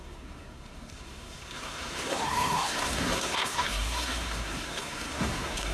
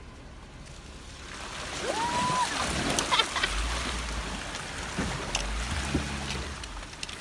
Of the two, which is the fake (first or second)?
first